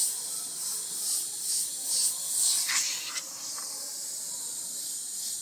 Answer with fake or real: real